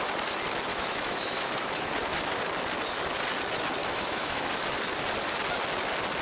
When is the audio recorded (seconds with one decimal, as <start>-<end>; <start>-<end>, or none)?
0.0-0.7; 1.9-3.8; 4.5-6.2